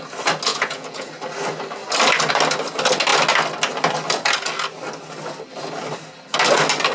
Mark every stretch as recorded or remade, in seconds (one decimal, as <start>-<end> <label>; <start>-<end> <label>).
0.0-0.5 recorded; 0.5-1.1 remade; 1.1-6.9 recorded